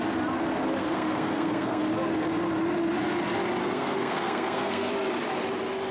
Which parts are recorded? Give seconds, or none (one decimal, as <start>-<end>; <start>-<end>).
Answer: 0.0-0.8; 1.8-3.6; 4.9-5.9